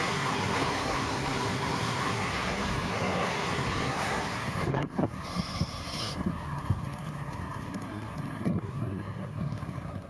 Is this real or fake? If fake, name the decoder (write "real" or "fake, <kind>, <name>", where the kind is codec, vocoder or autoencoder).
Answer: fake, codec, SNAC